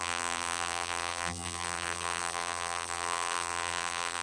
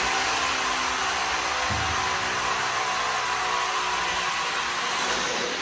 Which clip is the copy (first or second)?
first